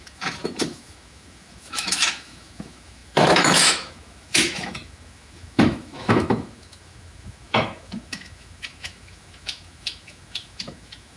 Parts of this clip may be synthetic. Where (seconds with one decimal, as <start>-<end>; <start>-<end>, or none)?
0.0-11.2